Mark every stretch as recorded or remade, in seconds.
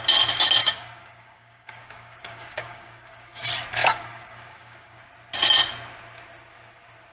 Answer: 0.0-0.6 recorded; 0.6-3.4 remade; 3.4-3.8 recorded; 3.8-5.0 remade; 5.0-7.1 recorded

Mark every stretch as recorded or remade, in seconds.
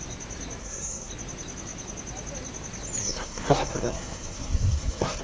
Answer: 0.0-0.6 recorded; 0.6-1.1 remade; 1.1-3.0 recorded; 3.0-5.2 remade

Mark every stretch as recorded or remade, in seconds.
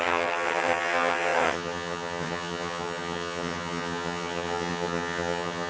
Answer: 0.0-5.7 remade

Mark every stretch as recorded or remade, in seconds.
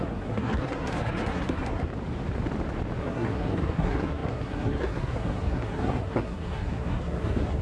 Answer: 0.0-1.9 remade; 1.9-3.0 recorded; 3.0-7.6 remade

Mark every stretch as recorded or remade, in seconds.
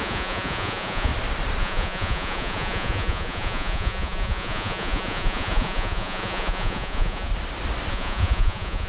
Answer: 0.0-1.1 remade; 1.1-1.6 recorded; 1.6-7.3 remade; 7.3-7.9 recorded; 7.9-8.9 remade